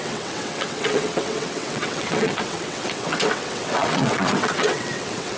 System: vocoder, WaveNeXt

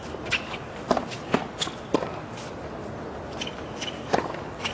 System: none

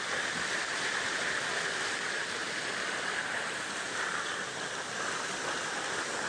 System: none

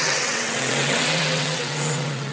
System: vocoder, WaveNeXt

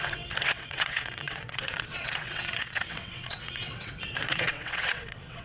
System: vocoder, WaveNeXt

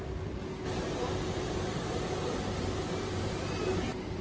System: none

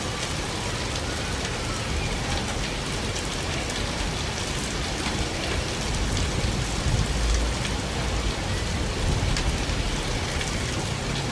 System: none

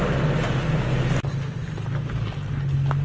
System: none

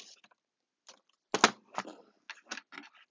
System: none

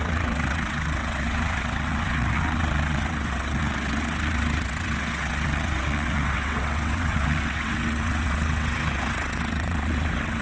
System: vocoder, WaveNeXt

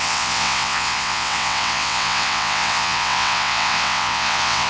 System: vocoder, WaveNeXt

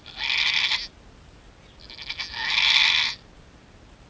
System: none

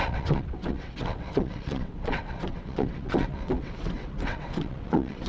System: vocoder, WaveNeXt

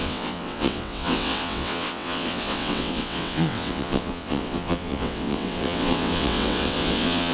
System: vocoder, WaveNeXt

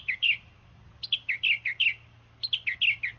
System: none